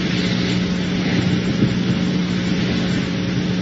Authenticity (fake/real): real